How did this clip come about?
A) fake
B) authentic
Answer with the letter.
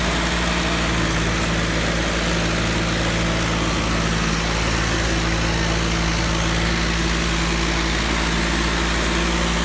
B